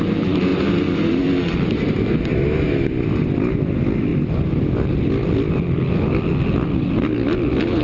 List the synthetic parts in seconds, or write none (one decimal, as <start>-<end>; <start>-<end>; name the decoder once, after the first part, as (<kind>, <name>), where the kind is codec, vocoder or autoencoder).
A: none